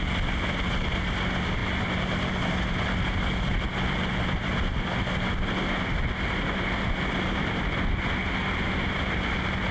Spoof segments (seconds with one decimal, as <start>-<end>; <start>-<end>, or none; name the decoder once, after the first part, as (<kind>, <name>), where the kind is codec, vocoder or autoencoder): none